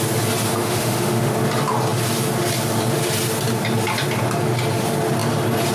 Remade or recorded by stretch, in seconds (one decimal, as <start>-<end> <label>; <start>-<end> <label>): 0.0-0.6 recorded; 0.6-1.3 remade; 1.3-5.7 recorded